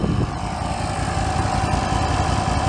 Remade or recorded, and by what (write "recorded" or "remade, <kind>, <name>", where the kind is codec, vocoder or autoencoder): recorded